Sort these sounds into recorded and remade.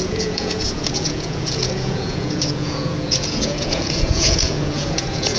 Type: remade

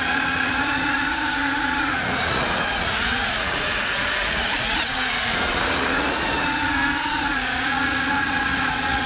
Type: remade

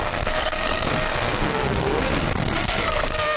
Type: remade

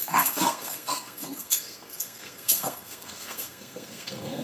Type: remade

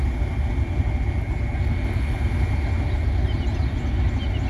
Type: recorded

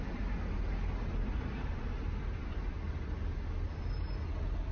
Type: recorded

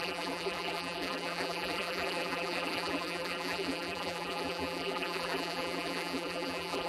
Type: remade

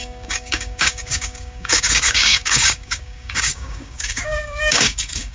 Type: remade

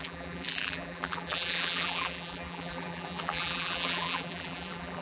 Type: remade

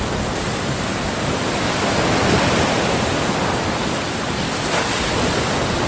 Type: recorded